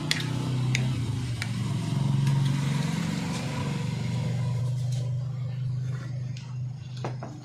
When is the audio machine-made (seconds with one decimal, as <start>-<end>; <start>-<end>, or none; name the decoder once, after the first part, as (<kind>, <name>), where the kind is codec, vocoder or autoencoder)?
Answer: 3.6-4.6 (codec, DAC)